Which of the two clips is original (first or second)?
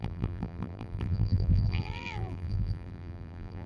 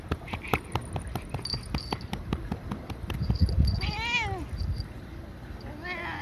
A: second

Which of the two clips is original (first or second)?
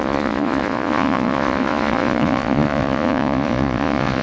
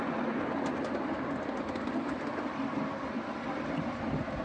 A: second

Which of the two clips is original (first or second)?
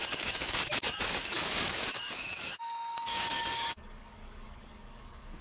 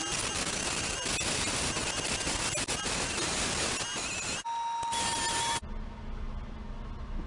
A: second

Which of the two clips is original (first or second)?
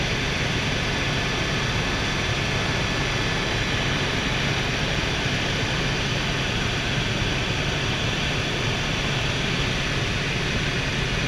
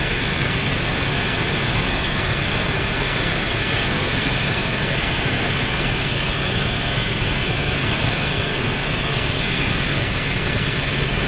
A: first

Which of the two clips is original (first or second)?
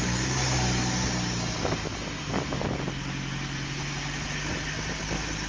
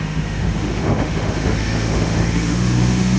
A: first